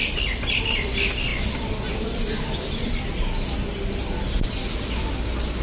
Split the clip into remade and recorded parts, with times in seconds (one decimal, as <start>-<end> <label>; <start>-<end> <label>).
0.0-0.6 remade; 0.6-1.3 recorded; 1.3-3.2 remade; 3.2-5.6 recorded